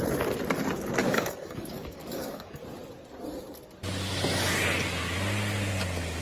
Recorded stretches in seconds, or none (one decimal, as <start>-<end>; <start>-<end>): 0.0-1.0; 2.6-6.2